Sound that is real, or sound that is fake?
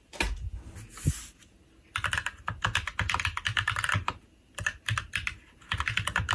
real